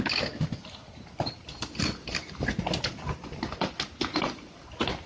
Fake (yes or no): no